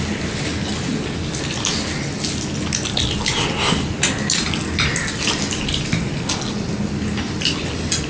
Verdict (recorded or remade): recorded